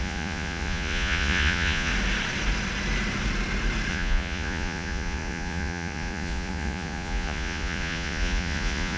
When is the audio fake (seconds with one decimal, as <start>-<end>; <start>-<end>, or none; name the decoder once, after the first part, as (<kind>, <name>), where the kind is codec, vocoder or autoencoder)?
0.0-1.9 (vocoder, Vocos); 3.9-9.0